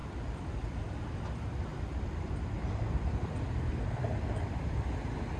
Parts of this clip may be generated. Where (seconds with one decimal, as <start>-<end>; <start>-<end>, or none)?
0.0-0.9; 1.7-4.9